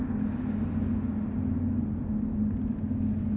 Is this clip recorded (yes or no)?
yes